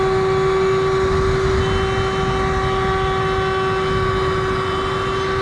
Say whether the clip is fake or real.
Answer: real